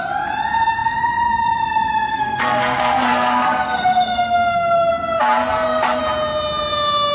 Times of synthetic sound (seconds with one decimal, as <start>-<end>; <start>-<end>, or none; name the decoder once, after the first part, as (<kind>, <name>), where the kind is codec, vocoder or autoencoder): 2.1-4.9 (codec, SNAC); 5.5-6.0

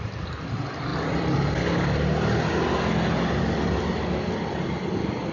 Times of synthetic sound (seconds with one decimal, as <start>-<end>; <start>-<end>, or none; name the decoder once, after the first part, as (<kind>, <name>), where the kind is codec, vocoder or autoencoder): none

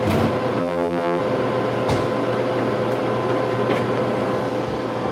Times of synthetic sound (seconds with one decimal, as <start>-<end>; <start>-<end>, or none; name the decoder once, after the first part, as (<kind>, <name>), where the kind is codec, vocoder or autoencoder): 0.6-1.2 (vocoder, BigVGAN v2)

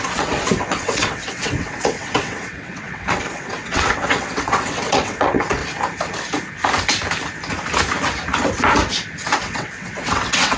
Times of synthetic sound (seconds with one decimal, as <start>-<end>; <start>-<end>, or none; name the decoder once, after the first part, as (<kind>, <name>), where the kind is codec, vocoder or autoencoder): 0.0-5.6 (vocoder, WaveNeXt); 9.4-10.6

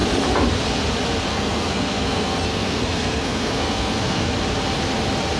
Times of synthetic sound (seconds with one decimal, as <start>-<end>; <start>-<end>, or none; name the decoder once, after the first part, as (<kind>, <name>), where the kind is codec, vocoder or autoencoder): 1.3-4.3 (codec, SNAC)